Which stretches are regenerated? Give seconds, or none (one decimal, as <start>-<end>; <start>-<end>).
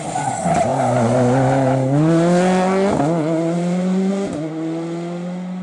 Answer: none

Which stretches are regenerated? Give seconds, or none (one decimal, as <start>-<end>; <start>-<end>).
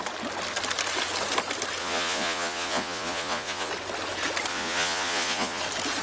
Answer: 1.8-3.7; 4.5-5.6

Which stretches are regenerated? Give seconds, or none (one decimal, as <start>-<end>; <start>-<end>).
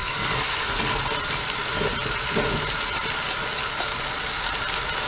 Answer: 0.0-0.8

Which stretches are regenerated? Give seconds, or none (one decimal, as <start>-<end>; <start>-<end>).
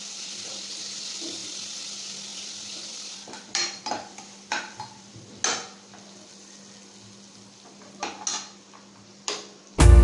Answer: 1.4-1.9; 2.3-5.1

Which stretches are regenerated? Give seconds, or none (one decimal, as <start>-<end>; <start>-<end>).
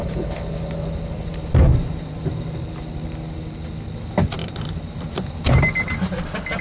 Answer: 1.3-2.3; 4.4-5.6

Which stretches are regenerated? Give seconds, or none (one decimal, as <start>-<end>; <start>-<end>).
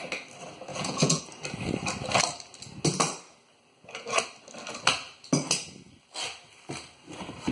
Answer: 0.7-1.2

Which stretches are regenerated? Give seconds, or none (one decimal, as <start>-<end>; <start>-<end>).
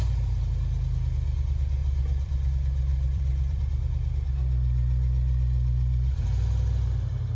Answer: 1.8-2.5; 2.9-3.6